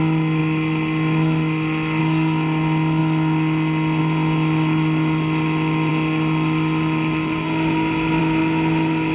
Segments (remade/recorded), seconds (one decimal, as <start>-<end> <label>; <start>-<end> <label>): 0.0-9.1 recorded